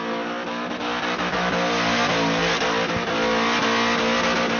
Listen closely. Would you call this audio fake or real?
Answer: real